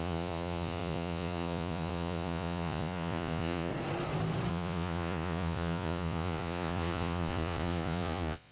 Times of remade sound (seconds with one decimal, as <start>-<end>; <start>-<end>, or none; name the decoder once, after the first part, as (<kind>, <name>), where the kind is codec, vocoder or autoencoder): 0.0-3.7 (vocoder, Vocos); 4.5-8.5